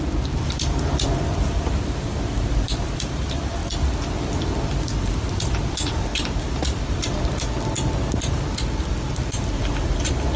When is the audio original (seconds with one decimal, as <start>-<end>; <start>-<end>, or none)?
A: 3.6-4.7; 6.1-9.6